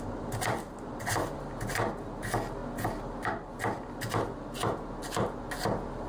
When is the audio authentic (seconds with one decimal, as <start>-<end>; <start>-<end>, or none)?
0.0-6.1